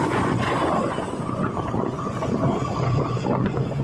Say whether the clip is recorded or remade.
remade